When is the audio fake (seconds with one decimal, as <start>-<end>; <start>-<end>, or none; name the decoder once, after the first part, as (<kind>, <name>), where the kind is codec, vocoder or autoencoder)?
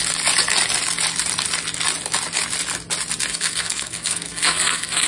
3.3-5.1 (codec, SNAC)